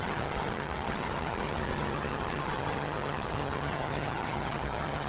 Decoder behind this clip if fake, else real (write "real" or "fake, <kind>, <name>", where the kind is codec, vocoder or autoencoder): fake, vocoder, HiFi-GAN